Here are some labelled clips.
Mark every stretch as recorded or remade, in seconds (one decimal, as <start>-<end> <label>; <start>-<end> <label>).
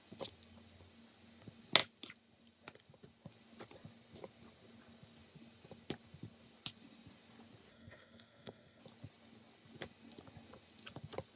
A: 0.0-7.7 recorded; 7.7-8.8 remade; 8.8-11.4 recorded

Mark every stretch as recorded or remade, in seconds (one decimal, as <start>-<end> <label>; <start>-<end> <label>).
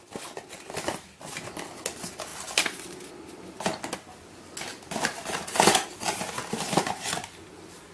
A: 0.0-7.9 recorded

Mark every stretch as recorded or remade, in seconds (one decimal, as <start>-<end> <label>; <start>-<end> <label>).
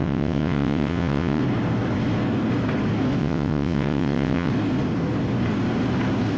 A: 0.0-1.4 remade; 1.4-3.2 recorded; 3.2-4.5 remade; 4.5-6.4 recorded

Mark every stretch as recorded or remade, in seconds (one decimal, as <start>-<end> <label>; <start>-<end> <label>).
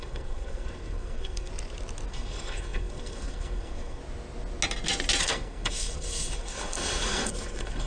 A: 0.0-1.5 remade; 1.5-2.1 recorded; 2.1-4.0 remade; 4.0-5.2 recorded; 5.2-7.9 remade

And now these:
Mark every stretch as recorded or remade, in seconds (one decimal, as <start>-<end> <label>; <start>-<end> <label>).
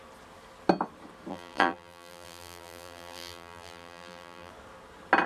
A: 0.0-1.3 recorded; 1.3-4.5 remade; 4.5-5.3 recorded